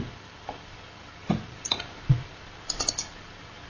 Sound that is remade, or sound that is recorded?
recorded